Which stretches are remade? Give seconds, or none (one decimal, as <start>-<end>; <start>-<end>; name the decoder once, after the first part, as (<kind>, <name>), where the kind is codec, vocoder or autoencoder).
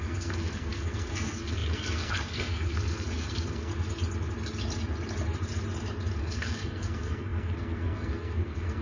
0.0-3.7 (codec, SNAC); 6.2-8.8